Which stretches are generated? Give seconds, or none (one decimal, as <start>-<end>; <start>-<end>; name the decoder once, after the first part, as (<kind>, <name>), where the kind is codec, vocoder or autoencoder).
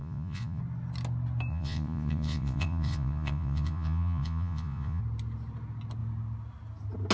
0.0-0.6 (vocoder, Vocos); 1.5-5.0